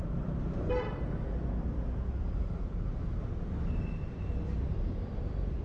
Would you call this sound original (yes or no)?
no